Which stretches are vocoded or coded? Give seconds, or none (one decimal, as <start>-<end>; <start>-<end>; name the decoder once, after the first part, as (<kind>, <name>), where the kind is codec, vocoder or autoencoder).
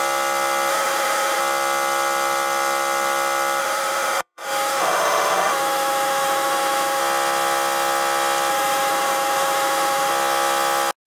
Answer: 0.7-1.4 (autoencoder, DAC-VAE); 3.6-7.0; 8.5-10.1